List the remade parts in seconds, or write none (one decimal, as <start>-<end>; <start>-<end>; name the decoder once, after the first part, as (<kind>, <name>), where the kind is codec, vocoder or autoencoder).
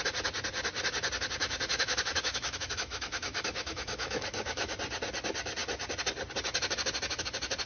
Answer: 1.4-4.7 (autoencoder, DAC-VAE)